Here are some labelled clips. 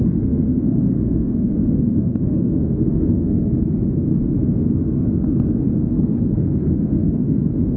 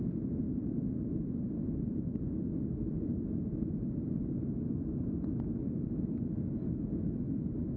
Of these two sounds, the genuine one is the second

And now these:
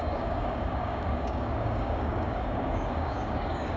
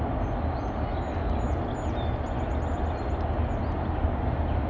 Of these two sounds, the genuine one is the second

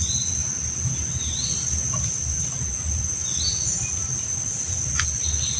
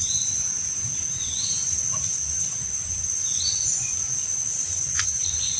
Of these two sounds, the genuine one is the first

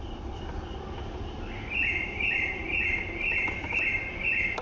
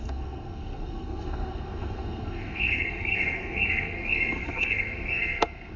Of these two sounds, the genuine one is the first